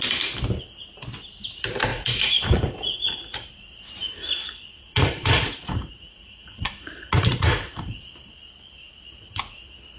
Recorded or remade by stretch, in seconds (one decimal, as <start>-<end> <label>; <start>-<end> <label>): 0.0-1.9 recorded; 1.9-2.8 remade; 2.8-4.0 recorded; 4.0-7.9 remade; 7.9-10.0 recorded